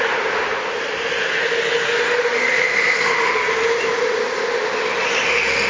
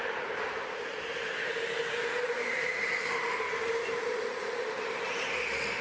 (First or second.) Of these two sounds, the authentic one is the first